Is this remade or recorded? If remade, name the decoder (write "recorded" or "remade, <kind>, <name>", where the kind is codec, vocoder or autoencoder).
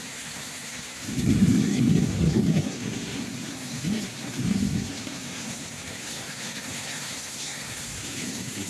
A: remade, codec, SNAC